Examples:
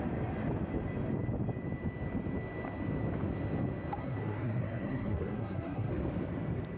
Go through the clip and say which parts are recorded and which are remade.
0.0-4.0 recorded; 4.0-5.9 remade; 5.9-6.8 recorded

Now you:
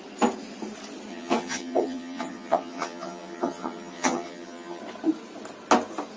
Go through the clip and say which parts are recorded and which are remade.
0.0-1.1 recorded; 1.1-4.8 remade; 4.8-6.2 recorded

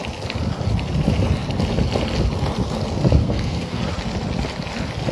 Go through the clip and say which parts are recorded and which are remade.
0.0-3.2 recorded; 3.2-3.8 remade; 3.8-5.1 recorded

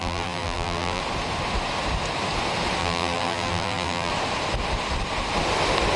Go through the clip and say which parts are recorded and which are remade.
0.0-1.0 remade; 1.0-2.8 recorded; 2.8-4.1 remade; 4.1-6.0 recorded

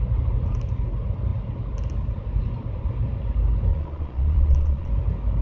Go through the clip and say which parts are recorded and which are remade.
0.0-3.7 recorded; 3.7-4.9 remade; 4.9-5.4 recorded